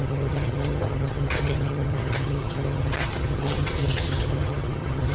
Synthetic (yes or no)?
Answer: yes